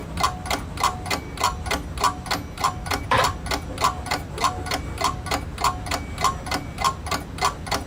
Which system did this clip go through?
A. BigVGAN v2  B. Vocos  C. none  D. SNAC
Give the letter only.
C